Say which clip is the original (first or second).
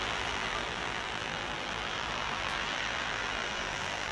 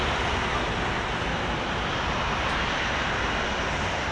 second